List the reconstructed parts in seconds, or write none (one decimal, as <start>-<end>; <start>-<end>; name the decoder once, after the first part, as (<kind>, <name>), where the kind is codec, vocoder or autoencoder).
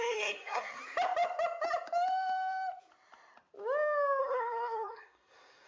0.0-0.8 (codec, SNAC); 4.2-5.7